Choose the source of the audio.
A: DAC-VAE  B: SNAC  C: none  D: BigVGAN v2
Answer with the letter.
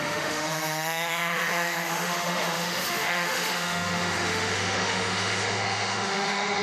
A